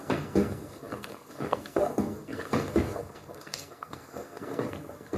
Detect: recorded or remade remade